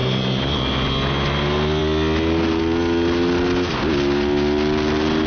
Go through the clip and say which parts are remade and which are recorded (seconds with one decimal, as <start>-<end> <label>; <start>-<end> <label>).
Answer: 0.0-5.3 recorded